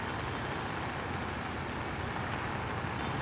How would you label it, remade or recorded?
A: recorded